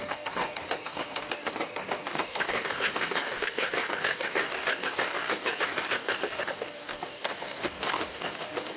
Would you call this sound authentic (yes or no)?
no